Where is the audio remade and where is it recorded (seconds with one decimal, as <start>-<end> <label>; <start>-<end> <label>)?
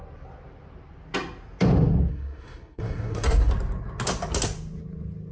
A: 0.0-2.1 recorded; 2.1-3.5 remade; 3.5-5.3 recorded